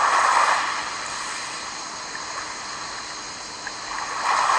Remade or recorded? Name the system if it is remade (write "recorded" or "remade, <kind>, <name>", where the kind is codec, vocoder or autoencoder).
recorded